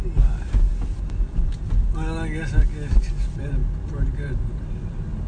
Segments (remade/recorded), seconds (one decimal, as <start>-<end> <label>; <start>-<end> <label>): 0.0-5.3 recorded